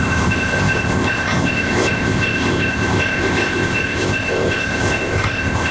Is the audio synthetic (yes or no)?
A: yes